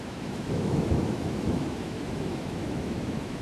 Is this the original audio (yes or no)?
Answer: no